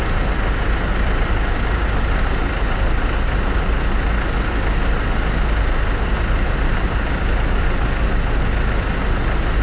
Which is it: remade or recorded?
recorded